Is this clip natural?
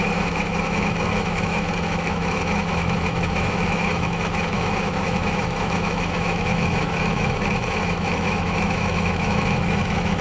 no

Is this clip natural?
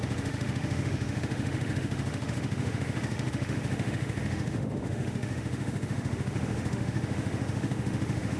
no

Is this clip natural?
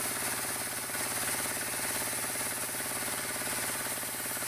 yes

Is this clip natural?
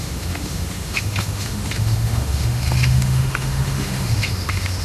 no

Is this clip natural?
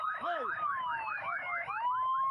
no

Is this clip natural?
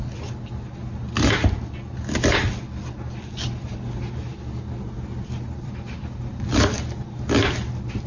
yes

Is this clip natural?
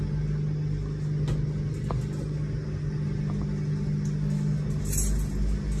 yes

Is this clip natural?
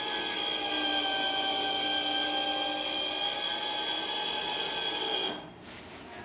yes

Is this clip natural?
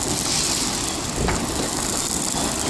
yes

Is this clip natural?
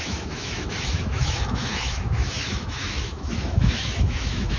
no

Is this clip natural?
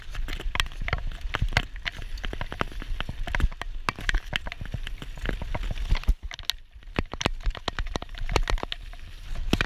yes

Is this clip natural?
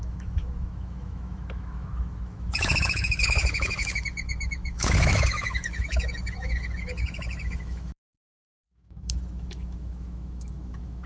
no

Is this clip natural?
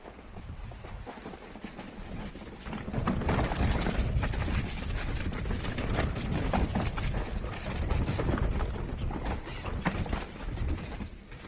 yes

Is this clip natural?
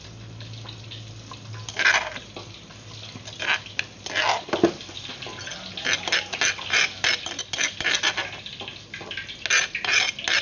yes